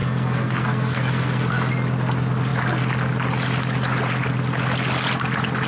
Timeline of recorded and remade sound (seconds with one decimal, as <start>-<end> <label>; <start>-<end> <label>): 0.0-1.7 remade; 1.7-5.7 recorded